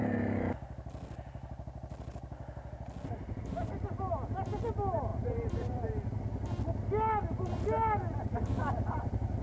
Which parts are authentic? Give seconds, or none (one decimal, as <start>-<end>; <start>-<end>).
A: 0.0-5.1; 5.9-9.4